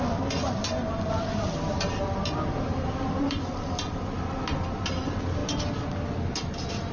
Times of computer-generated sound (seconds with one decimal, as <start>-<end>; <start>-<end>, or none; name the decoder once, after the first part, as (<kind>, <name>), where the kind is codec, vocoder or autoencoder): 2.7-3.4 (vocoder, BigVGAN v2)